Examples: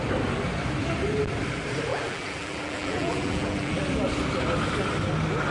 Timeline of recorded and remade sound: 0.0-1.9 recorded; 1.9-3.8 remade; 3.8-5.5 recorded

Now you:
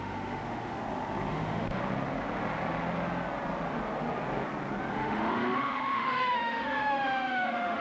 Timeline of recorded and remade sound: 0.0-0.8 remade; 0.8-1.3 recorded; 1.3-1.8 remade; 1.8-4.9 recorded; 4.9-7.8 remade

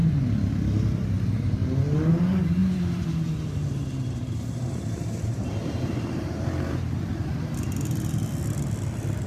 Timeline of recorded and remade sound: 0.0-2.6 recorded; 2.6-7.3 remade; 7.3-9.3 recorded

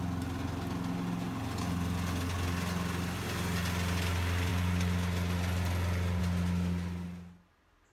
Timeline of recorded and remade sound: 0.0-7.9 recorded

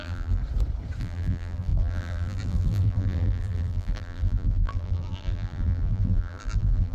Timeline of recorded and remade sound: 0.0-0.4 remade; 0.4-1.0 recorded; 1.0-6.9 remade